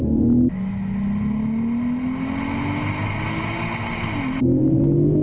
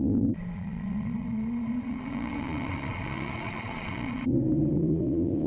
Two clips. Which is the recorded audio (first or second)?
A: first